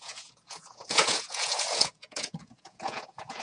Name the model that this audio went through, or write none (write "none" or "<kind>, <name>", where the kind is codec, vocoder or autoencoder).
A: vocoder, Vocos